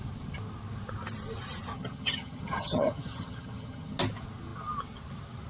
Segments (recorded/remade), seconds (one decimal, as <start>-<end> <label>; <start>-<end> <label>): 0.0-1.7 recorded; 1.7-4.0 remade; 4.0-5.5 recorded

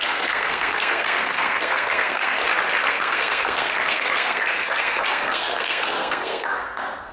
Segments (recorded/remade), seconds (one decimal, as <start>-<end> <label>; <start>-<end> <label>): 0.0-2.4 remade; 2.4-2.9 recorded; 2.9-7.1 remade